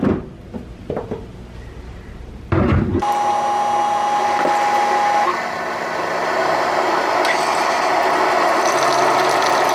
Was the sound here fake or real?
real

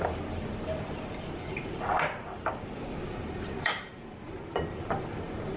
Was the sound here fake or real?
fake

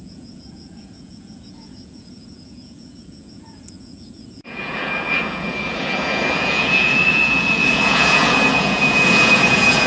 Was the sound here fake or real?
fake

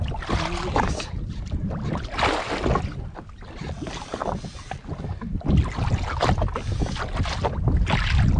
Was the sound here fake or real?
real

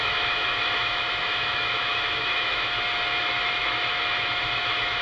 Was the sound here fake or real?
fake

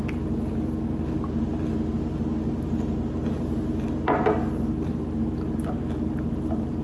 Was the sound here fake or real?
real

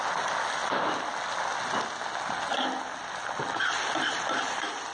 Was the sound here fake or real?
real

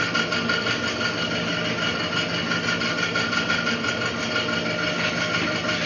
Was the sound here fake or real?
real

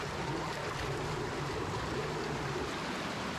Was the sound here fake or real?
real